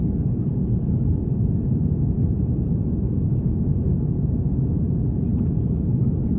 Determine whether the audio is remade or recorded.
remade